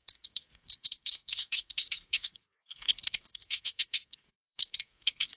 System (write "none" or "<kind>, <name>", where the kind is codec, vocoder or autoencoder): codec, SNAC